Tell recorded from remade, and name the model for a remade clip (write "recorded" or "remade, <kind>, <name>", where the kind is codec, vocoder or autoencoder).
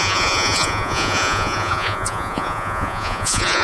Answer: remade, vocoder, Vocos